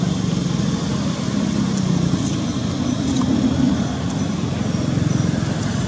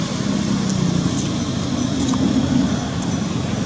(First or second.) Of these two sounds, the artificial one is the first